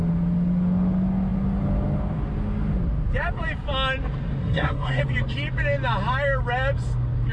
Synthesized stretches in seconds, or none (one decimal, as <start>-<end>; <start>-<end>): 4.4-5.0